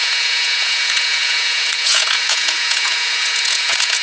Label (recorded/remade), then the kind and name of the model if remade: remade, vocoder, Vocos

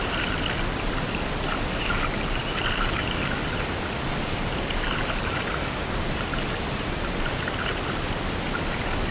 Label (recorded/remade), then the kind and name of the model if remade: recorded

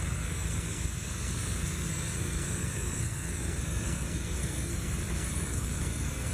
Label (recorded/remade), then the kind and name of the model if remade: remade, codec, SNAC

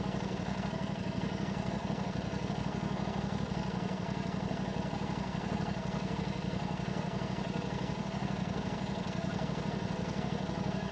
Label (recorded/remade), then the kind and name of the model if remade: remade, codec, SNAC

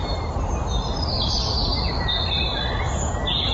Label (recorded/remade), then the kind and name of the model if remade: recorded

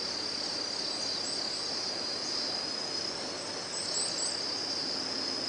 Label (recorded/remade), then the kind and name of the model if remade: recorded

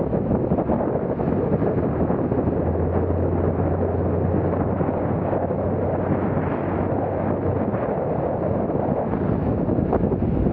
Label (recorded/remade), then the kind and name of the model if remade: recorded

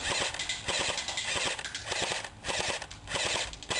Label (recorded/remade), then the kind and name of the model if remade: recorded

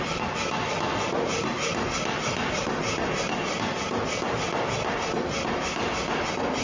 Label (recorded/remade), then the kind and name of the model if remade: recorded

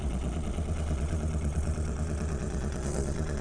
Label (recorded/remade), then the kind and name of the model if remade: remade, vocoder, Vocos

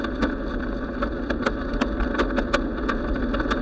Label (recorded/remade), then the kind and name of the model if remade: recorded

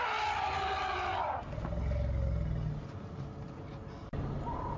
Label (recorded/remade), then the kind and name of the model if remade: recorded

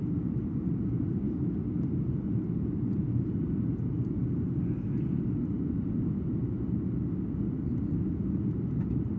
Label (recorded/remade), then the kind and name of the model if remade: recorded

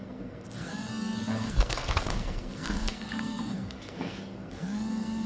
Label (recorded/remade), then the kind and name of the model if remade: remade, codec, SNAC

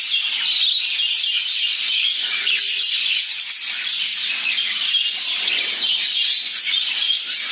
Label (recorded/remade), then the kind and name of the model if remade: recorded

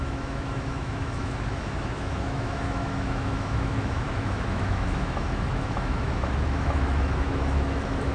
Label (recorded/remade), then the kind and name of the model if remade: remade, autoencoder, DAC-VAE